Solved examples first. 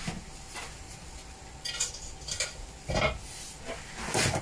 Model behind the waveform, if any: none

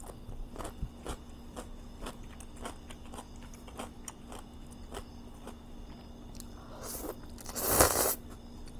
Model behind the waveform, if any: none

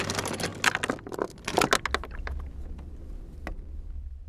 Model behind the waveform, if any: none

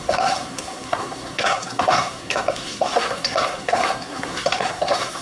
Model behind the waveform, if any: codec, SNAC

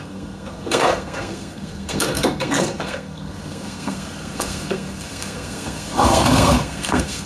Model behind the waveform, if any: codec, SNAC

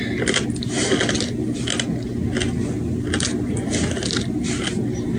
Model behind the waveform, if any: none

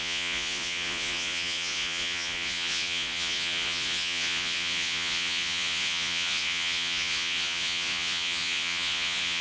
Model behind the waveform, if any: vocoder, Vocos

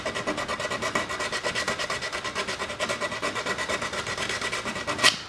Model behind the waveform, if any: none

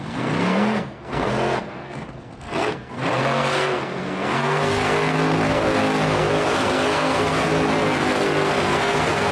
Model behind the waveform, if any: codec, SNAC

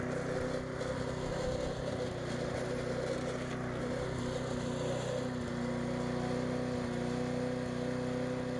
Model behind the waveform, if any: none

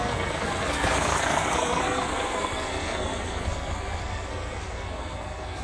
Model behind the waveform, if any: codec, SNAC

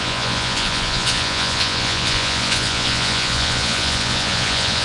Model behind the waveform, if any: vocoder, Vocos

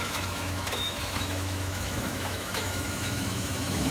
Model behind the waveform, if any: autoencoder, DAC-VAE